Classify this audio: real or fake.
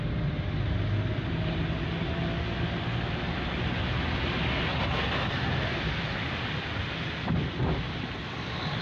real